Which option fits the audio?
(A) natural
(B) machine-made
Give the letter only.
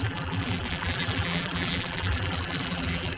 B